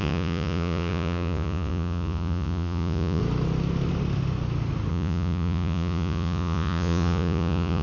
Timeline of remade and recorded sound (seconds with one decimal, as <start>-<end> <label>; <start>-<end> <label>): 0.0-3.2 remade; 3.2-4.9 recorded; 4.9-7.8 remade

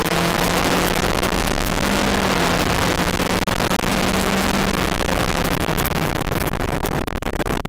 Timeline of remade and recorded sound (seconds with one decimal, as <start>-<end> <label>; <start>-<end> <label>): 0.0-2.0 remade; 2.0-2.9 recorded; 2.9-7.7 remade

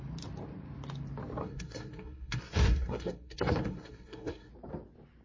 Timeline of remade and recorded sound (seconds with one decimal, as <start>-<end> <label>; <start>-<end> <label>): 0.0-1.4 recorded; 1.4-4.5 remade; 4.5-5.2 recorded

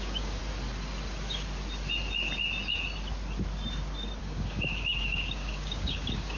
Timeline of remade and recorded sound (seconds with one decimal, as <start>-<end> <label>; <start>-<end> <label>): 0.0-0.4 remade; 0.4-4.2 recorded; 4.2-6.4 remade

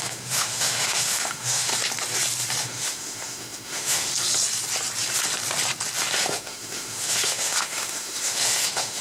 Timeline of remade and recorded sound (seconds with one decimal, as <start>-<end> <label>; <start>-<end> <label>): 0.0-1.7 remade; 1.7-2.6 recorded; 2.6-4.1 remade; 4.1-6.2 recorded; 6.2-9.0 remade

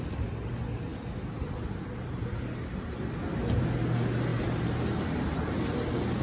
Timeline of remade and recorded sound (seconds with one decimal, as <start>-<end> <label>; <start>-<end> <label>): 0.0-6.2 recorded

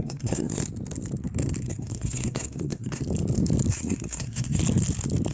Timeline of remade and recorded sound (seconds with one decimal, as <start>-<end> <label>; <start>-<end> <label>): 0.0-0.6 remade; 0.6-1.6 recorded; 1.6-3.0 remade; 3.0-3.7 recorded; 3.7-4.6 remade; 4.6-5.3 recorded

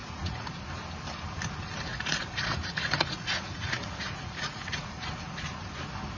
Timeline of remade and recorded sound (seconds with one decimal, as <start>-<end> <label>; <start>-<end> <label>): 0.0-0.6 remade; 0.6-1.9 recorded; 1.9-5.2 remade; 5.2-6.2 recorded